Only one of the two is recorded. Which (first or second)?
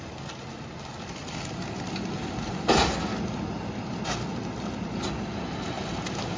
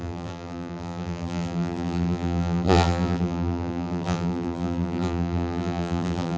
first